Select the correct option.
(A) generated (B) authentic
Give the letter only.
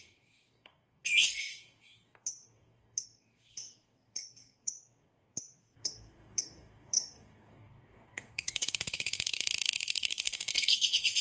A